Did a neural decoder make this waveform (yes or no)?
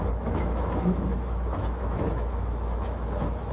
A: yes